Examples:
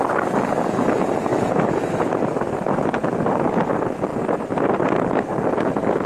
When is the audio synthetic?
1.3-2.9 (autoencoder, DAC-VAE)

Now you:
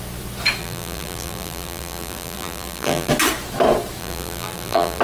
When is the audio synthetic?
0.6-3.1 (vocoder, BigVGAN v2); 4.0-5.0

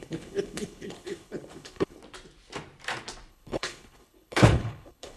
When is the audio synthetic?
0.0-2.0 (codec, HILCodec); 3.3-5.2

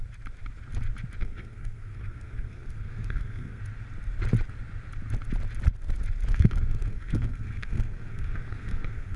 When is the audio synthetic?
1.2-3.6 (codec, SNAC); 6.3-9.2

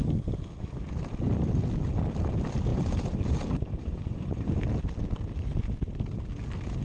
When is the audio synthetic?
2.7-4.5 (vocoder, BigVGAN v2)

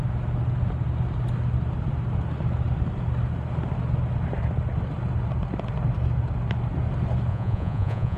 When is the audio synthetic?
7.3-8.2 (vocoder, Vocos)

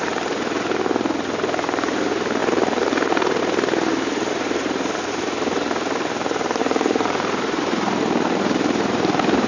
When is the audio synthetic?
2.4-3.4 (vocoder, BigVGAN v2); 3.9-5.2; 6.6-9.5